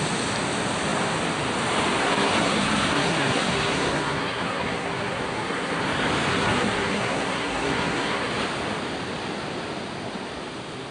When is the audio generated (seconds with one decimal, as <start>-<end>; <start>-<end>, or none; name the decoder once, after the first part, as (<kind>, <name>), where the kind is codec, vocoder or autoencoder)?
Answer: 2.0-5.8 (codec, SNAC); 6.3-8.3